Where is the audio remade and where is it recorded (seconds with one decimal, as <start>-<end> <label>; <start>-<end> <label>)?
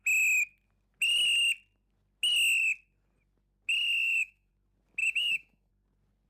0.0-4.0 recorded; 4.0-4.5 remade; 4.5-5.0 recorded; 5.0-5.7 remade; 5.7-6.3 recorded